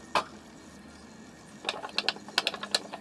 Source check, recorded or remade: recorded